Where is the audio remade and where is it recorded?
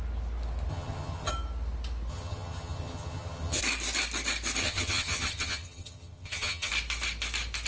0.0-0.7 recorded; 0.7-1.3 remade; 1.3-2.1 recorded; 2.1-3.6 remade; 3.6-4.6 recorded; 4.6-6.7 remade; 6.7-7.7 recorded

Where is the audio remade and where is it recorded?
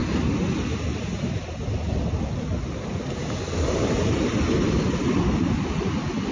0.0-6.3 recorded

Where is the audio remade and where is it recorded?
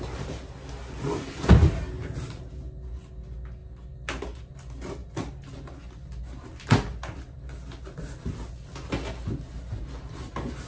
0.0-10.7 recorded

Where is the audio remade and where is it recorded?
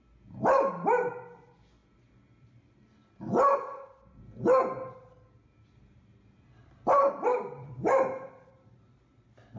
0.0-1.8 recorded; 1.8-4.2 remade; 4.2-6.6 recorded; 6.6-8.9 remade; 8.9-9.6 recorded